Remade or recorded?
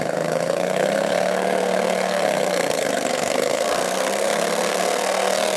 remade